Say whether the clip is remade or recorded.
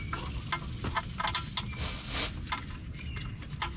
recorded